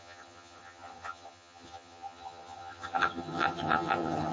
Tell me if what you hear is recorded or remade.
remade